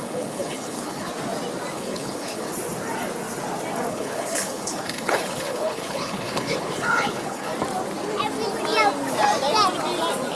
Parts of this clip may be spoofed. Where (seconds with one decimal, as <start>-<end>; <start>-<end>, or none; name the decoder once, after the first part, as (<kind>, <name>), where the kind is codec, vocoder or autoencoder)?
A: 0.0-1.1 (codec, HILCodec); 1.7-2.5; 3.9-7.5